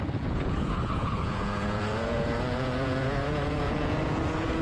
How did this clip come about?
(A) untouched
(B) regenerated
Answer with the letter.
B